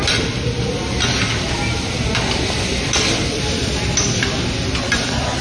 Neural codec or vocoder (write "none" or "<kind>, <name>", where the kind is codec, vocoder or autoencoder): none